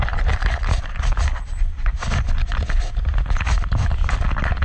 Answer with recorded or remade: recorded